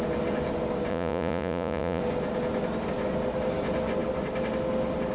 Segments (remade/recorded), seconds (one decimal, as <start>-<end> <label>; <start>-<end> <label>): 0.0-0.9 recorded; 0.9-2.0 remade; 2.0-5.1 recorded